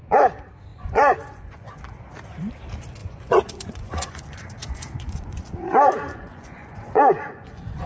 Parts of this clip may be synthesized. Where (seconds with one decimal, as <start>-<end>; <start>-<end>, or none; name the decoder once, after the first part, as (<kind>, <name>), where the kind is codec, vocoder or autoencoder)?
0.7-1.8 (vocoder, Vocos); 3.0-7.9